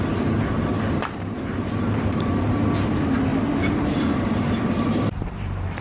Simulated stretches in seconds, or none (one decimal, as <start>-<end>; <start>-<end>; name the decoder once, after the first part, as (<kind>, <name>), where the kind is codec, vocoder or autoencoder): 1.0-2.3 (vocoder, BigVGAN v2); 3.3-5.8